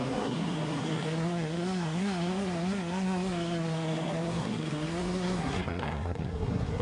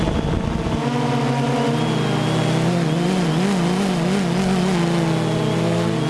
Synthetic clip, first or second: first